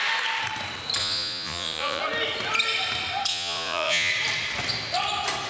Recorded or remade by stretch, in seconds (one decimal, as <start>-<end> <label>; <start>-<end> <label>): 0.0-1.0 recorded; 1.0-2.0 remade; 2.0-3.3 recorded; 3.3-4.1 remade; 4.1-5.5 recorded